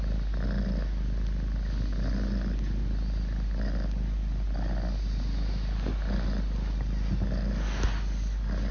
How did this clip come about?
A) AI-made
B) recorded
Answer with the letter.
B